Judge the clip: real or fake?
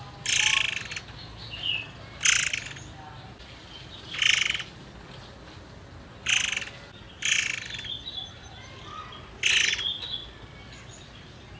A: real